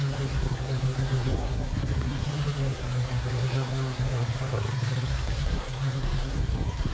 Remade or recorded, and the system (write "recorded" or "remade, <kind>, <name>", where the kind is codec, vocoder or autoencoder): remade, codec, SNAC